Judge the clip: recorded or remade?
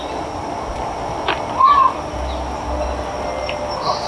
recorded